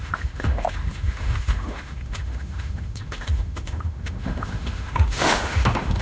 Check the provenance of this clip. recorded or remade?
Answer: remade